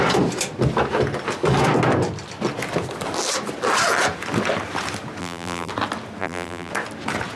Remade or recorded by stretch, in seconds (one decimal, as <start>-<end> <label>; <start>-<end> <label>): 0.0-5.2 recorded; 5.2-5.7 remade; 5.7-6.2 recorded; 6.2-6.7 remade; 6.7-7.4 recorded